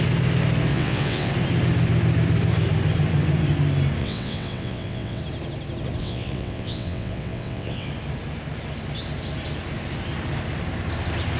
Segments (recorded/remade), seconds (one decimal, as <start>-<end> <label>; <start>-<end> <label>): 0.0-0.7 recorded; 0.7-1.3 remade; 1.3-4.0 recorded; 4.0-5.2 remade; 5.2-6.0 recorded; 6.0-7.9 remade; 7.9-11.4 recorded